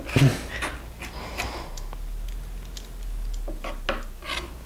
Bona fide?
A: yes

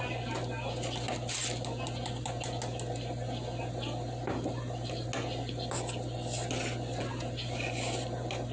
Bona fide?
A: yes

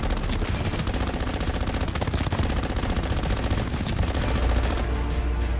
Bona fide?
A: yes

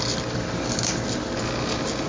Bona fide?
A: yes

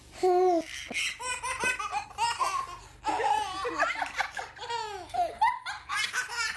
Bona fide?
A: yes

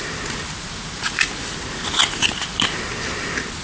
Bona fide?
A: yes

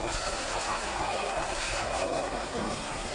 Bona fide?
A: no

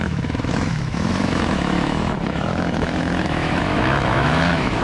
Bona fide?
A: no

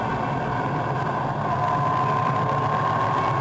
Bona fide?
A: yes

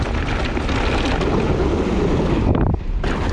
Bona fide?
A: yes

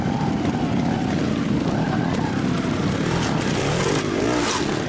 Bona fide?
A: yes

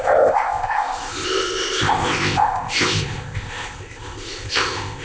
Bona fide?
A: no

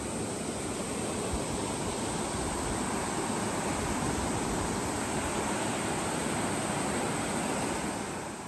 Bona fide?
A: yes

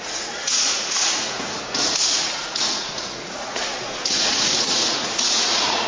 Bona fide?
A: no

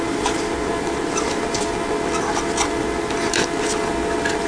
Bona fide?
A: yes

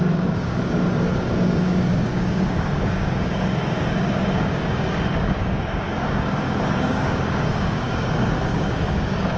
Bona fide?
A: no